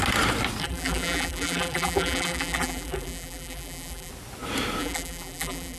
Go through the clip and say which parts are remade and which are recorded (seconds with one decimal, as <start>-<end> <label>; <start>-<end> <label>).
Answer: 0.0-0.6 recorded; 0.6-4.1 remade; 4.1-4.8 recorded; 4.8-5.8 remade